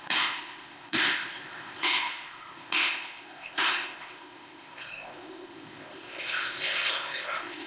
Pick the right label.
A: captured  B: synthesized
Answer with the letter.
B